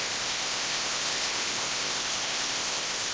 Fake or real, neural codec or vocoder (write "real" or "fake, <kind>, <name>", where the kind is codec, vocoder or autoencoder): fake, codec, ZipCodec